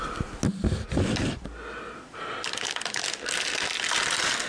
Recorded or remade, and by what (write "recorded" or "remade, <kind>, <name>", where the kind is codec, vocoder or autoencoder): recorded